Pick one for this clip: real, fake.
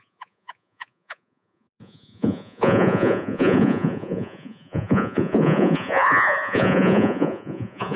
fake